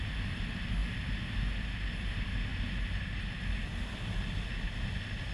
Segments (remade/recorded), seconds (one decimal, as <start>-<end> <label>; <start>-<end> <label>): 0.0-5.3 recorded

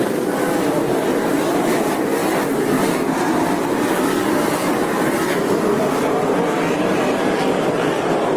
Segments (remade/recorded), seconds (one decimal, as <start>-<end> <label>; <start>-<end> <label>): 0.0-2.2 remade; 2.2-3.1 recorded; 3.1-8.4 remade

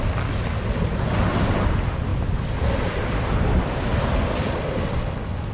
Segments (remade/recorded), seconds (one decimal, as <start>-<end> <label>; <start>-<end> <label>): 0.0-2.1 recorded; 2.1-5.1 remade; 5.1-5.5 recorded

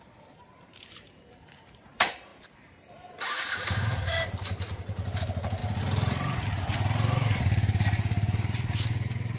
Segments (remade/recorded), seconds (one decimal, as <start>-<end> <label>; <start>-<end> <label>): 0.0-5.6 remade; 5.6-7.2 recorded; 7.2-9.4 remade

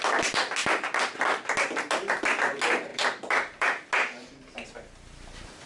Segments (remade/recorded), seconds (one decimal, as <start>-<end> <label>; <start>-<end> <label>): 0.0-0.6 recorded; 0.6-1.2 remade; 1.2-2.9 recorded; 2.9-3.7 remade; 3.7-5.7 recorded

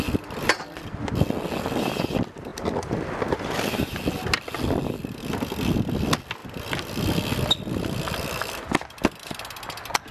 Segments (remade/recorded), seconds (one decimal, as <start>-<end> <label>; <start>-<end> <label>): 0.0-2.5 recorded; 2.5-4.8 remade; 4.8-10.1 recorded

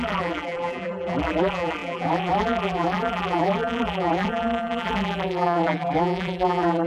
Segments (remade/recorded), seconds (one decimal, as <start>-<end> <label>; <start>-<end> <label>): 0.0-6.9 remade

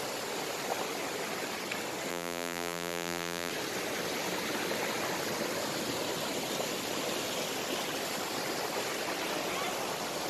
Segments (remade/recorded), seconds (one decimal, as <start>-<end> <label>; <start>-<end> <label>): 0.0-2.1 recorded; 2.1-3.5 remade; 3.5-10.3 recorded